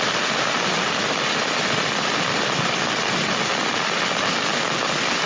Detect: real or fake real